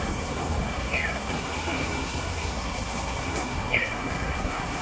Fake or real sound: fake